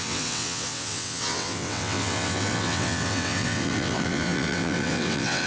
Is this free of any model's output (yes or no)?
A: no